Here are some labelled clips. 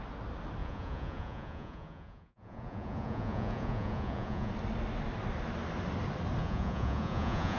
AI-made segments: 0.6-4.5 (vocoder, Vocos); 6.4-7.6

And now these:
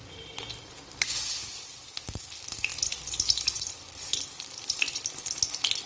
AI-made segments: none